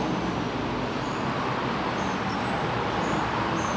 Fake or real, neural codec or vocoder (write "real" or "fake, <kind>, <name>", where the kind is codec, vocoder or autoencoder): real